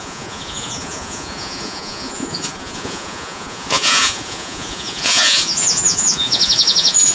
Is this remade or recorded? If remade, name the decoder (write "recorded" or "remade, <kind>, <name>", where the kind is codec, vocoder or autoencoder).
remade, vocoder, Vocos